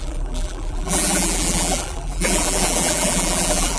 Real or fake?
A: fake